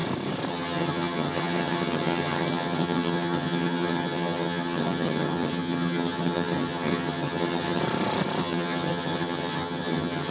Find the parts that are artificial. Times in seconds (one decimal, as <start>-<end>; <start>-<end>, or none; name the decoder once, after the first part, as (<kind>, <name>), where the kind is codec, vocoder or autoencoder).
0.5-7.8 (vocoder, HiFi-GAN); 8.4-10.3